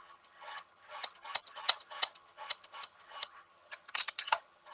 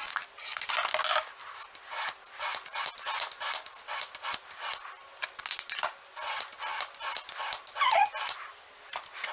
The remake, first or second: first